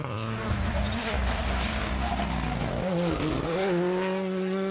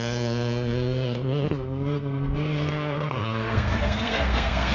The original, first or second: first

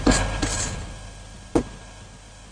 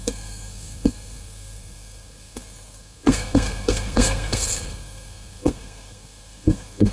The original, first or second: first